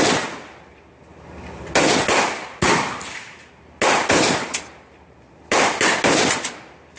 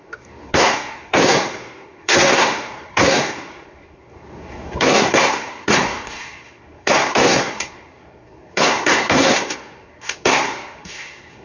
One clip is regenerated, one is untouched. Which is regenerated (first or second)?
second